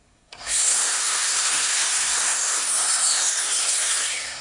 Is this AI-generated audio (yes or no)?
yes